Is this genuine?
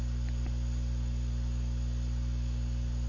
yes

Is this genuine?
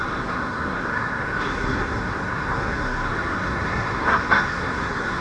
no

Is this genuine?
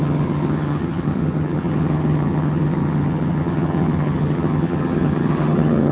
no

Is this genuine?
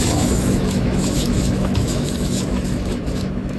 no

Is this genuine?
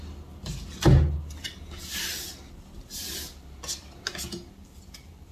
yes